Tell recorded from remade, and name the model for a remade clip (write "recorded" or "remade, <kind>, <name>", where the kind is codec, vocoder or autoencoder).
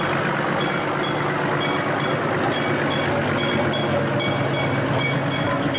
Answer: recorded